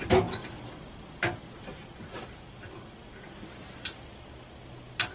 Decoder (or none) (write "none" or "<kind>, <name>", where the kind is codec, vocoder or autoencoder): none